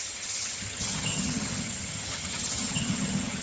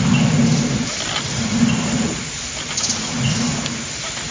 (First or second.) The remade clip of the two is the first